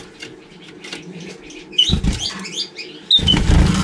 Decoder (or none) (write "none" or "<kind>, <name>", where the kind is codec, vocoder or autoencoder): none